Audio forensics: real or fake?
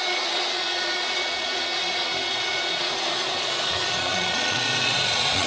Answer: fake